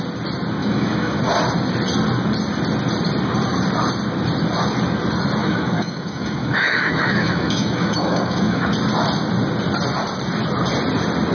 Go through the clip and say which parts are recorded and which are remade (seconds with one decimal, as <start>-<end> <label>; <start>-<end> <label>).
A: 0.0-0.6 recorded; 0.6-1.2 remade; 1.2-5.4 recorded; 5.4-8.7 remade; 8.7-11.3 recorded